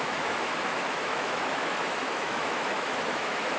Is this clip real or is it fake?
fake